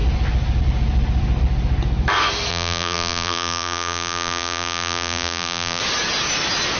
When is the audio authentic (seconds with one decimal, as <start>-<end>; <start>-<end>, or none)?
0.0-2.5; 5.8-6.8